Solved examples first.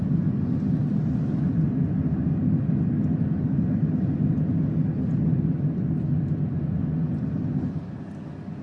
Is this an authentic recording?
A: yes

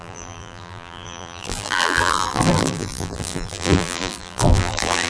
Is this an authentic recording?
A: no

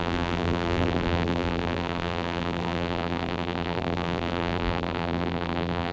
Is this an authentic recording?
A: no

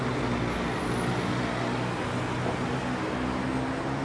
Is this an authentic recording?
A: yes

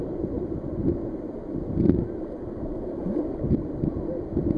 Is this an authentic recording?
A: yes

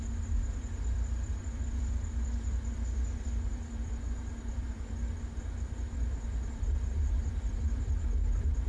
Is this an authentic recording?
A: no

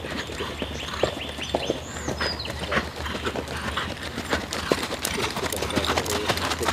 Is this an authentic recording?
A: yes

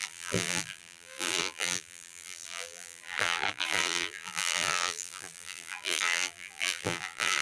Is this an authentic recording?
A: no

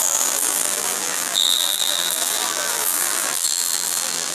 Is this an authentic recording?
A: no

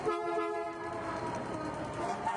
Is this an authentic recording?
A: no